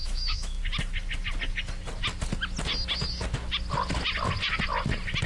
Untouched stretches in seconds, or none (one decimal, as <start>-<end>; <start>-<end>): 0.6-5.3